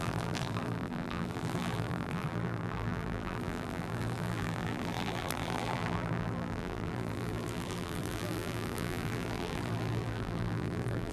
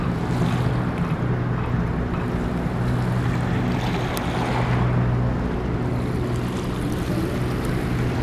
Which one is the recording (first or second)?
second